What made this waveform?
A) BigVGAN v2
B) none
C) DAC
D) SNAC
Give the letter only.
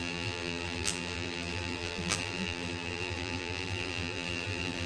A